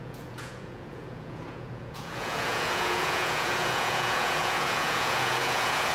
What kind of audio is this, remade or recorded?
remade